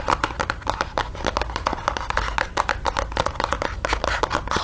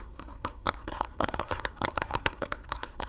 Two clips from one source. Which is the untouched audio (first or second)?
first